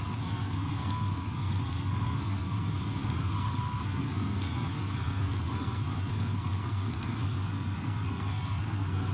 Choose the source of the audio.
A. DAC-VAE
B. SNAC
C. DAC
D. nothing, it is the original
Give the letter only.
B